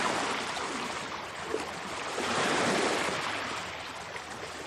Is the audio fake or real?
real